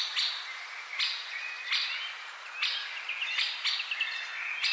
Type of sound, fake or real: real